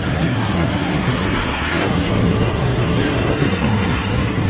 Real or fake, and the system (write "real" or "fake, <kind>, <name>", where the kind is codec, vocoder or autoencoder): fake, codec, SNAC